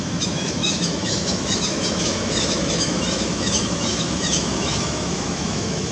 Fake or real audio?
fake